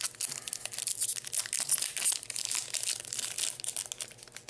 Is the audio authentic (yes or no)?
yes